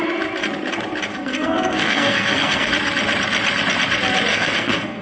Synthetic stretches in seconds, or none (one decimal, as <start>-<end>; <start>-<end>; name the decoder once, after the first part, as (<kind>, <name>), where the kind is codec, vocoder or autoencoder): 1.1-2.7 (codec, SNAC); 4.3-5.0